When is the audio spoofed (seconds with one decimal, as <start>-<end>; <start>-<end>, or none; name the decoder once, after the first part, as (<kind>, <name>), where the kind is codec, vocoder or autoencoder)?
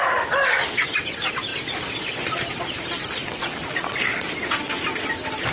3.2-3.7 (vocoder, BigVGAN v2)